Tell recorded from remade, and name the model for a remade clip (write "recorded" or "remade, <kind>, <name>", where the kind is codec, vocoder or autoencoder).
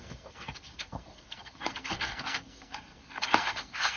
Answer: remade, codec, SNAC